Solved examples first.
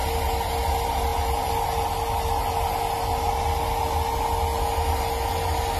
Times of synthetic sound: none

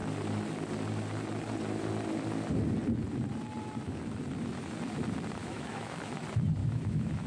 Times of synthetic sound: 5.4-6.0 (autoencoder, DAC-VAE); 6.6-7.3

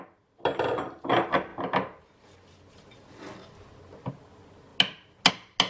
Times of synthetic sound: none

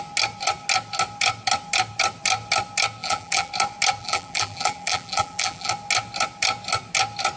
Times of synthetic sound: 3.0-3.5 (vocoder, BigVGAN v2); 4.0-5.7

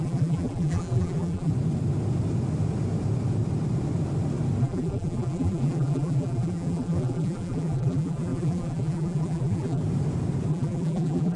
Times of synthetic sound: 0.0-1.5 (vocoder, BigVGAN v2); 4.6-9.8; 10.5-11.4